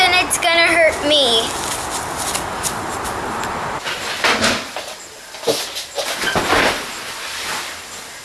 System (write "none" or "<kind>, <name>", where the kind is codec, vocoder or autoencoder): none